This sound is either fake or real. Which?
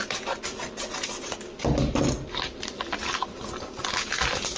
real